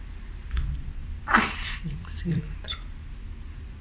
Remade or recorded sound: remade